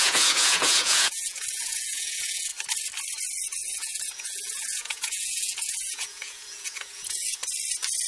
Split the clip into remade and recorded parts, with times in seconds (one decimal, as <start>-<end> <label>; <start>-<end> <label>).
0.0-2.5 remade; 2.5-3.6 recorded; 3.6-7.4 remade; 7.4-8.1 recorded